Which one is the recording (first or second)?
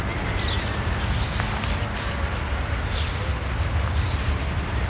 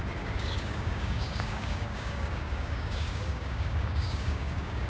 first